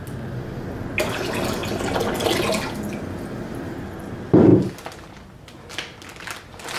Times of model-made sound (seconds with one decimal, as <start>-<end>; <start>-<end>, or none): none